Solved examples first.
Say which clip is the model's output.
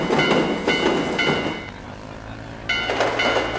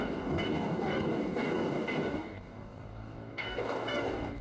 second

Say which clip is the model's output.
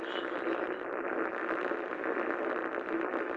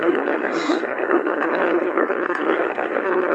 second